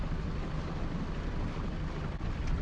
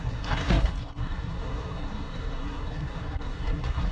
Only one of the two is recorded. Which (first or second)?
first